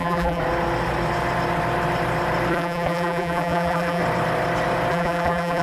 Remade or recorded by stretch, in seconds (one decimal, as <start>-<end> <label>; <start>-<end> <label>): 0.0-0.4 remade; 0.4-2.5 recorded; 2.5-4.0 remade; 4.0-4.9 recorded; 4.9-5.6 remade